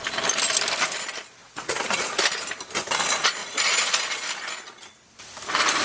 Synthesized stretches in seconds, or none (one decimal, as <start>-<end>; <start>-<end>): 1.4-2.2; 3.4-4.0